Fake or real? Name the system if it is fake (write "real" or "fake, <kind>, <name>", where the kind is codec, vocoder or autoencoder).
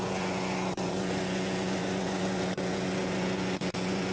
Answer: fake, vocoder, Vocos